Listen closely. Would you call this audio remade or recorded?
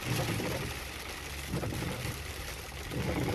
recorded